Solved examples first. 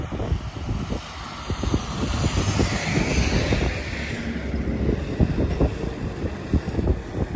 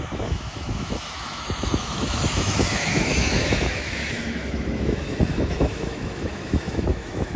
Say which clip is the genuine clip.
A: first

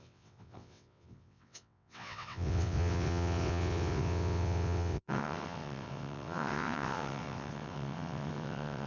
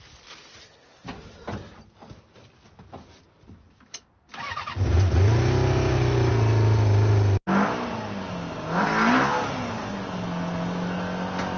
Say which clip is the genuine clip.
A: second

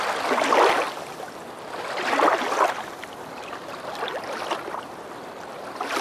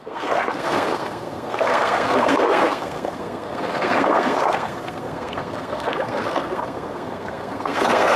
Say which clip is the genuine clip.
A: first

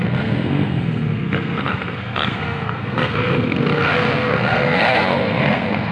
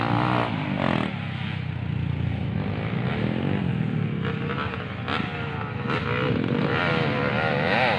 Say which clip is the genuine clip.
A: second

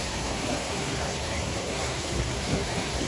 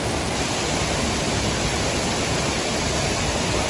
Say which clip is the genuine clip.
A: second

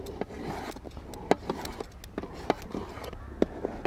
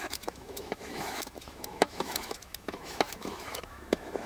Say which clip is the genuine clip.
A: first